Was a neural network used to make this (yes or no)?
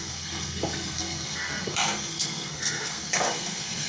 yes